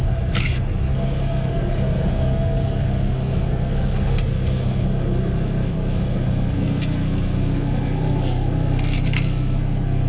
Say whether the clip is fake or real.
fake